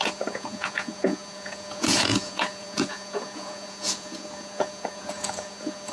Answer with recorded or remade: remade